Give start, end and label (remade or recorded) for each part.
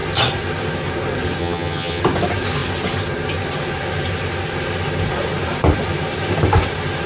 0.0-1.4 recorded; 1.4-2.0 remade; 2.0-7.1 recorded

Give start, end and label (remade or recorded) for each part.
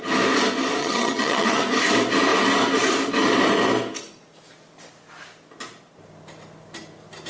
0.0-0.8 recorded; 0.8-1.6 remade; 1.6-7.3 recorded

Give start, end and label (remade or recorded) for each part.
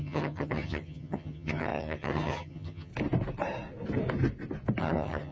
0.0-2.9 remade; 2.9-4.8 recorded; 4.8-5.3 remade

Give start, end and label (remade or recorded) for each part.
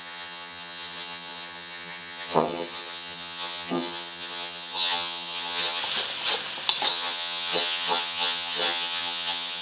0.0-5.8 remade; 5.8-6.9 recorded; 6.9-9.6 remade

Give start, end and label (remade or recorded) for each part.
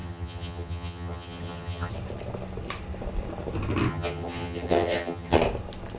0.0-1.9 remade; 1.9-3.9 recorded; 3.9-5.4 remade; 5.4-6.0 recorded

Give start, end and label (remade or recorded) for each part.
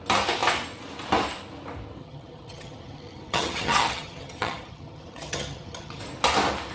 0.0-2.0 recorded; 2.0-6.0 remade; 6.0-6.7 recorded